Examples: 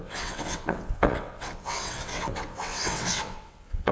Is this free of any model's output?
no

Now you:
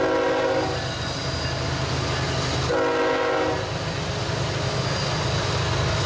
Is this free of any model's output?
yes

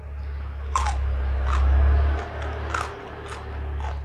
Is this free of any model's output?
yes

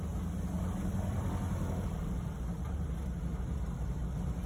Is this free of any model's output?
yes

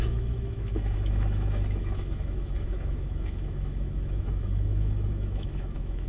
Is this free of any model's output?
no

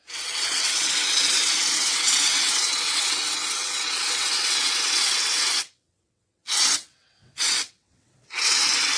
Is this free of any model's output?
no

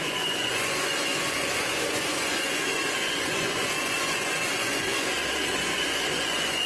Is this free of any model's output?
no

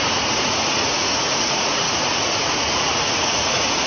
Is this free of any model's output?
no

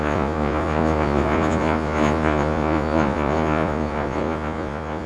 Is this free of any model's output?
no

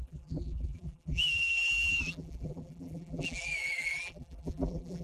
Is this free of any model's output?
no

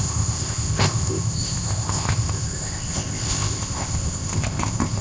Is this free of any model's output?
no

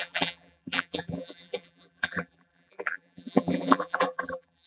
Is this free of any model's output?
no